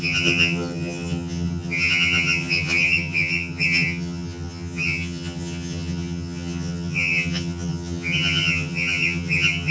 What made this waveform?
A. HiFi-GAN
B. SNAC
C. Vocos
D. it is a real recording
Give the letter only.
A